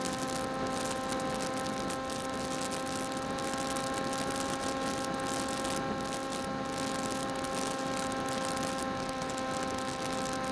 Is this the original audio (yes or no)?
yes